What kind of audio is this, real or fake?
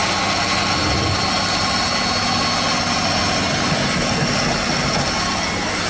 real